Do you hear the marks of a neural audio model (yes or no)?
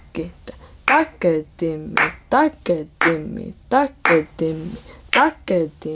no